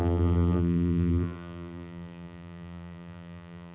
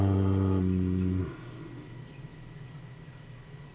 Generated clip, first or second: first